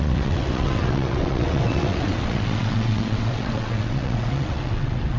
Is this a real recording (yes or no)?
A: no